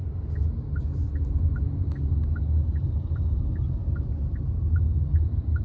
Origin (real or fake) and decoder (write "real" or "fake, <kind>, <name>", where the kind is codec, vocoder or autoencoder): real